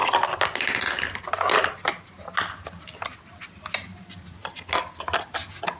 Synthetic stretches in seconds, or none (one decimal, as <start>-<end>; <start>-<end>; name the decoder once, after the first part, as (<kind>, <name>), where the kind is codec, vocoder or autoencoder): none